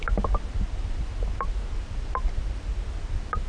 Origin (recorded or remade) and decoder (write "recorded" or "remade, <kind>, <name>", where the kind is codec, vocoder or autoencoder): recorded